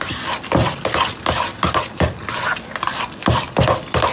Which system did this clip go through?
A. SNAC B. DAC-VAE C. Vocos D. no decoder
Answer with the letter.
D